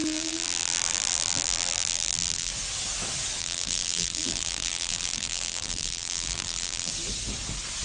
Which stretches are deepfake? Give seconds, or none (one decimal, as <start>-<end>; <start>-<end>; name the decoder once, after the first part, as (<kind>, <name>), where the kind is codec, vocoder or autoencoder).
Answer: 0.0-2.5 (vocoder, BigVGAN v2); 3.4-6.9